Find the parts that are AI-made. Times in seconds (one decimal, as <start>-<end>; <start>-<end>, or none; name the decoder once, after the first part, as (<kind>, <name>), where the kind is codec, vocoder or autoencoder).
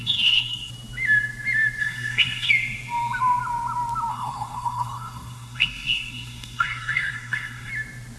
0.0-0.7 (codec, SNAC); 1.8-2.5; 4.1-7.7